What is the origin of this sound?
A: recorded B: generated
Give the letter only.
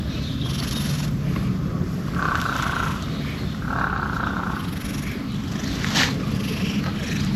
A